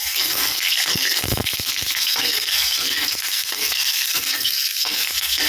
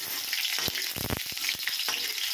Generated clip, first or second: first